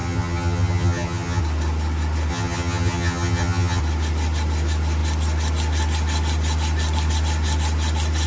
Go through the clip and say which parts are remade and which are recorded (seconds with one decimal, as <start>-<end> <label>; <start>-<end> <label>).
0.0-1.4 remade; 1.4-2.3 recorded; 2.3-3.8 remade; 3.8-8.3 recorded